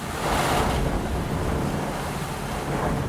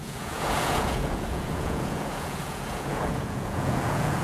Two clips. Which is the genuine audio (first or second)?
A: first